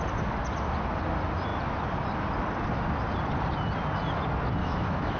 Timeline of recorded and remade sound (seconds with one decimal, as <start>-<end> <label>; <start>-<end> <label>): 0.0-4.6 recorded; 4.6-5.2 remade

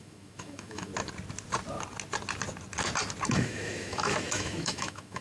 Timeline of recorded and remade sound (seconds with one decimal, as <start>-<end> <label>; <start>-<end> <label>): 0.0-0.9 remade; 0.9-3.3 recorded; 3.3-5.2 remade

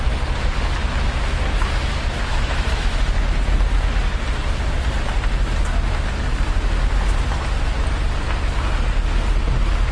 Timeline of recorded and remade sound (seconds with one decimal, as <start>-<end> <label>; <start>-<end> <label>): 0.0-2.3 recorded; 2.3-3.0 remade; 3.0-9.9 recorded

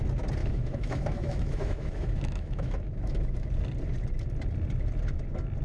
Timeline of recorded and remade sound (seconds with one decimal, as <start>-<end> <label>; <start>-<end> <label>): 0.0-0.4 recorded; 0.4-3.5 remade; 3.5-5.6 recorded